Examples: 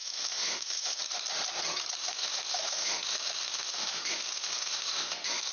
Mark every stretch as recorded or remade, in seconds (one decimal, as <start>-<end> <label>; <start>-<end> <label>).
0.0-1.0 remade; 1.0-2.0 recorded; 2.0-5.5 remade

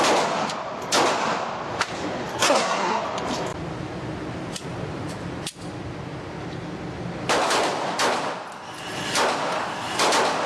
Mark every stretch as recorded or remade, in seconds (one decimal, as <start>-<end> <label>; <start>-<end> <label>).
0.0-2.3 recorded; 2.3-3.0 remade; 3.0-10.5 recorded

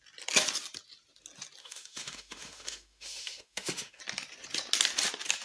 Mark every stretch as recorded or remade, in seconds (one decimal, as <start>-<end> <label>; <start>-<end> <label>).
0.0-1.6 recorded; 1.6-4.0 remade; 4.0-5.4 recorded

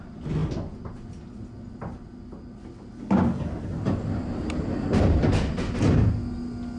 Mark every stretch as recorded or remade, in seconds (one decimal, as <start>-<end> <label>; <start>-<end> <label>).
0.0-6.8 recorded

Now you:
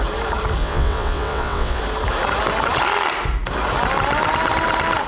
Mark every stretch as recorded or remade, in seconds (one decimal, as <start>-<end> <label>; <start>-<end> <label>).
0.0-0.6 recorded; 0.6-1.8 remade; 1.8-5.1 recorded

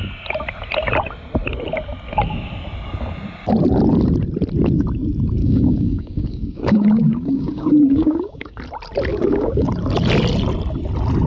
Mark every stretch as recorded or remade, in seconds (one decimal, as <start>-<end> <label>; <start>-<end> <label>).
0.0-5.4 recorded; 5.4-8.6 remade; 8.6-9.1 recorded; 9.1-9.7 remade; 9.7-11.3 recorded

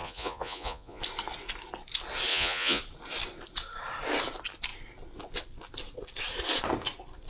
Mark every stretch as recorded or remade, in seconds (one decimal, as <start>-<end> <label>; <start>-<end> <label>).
0.0-1.0 remade; 1.0-2.3 recorded; 2.3-2.8 remade; 2.8-7.3 recorded